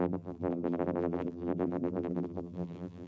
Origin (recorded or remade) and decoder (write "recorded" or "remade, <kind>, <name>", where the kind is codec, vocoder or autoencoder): remade, vocoder, BigVGAN v2